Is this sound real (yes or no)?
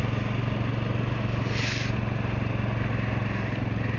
yes